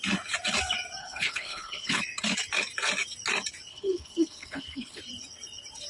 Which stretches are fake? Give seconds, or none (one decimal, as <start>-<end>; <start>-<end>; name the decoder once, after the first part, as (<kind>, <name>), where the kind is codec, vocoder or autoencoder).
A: 1.0-2.0 (codec, HILCodec); 3.7-5.0